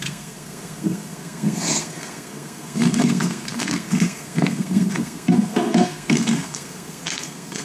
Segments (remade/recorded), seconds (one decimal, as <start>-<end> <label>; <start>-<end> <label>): 0.0-7.6 remade